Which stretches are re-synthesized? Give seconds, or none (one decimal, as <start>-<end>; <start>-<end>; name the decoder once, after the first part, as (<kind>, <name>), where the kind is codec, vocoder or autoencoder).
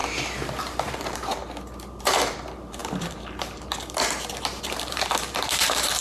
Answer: 0.6-1.4 (vocoder, BigVGAN v2); 2.0-6.0